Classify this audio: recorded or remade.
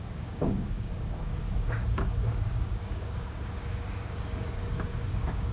remade